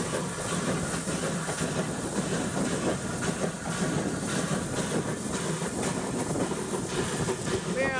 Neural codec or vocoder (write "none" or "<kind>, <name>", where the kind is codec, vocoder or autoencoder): none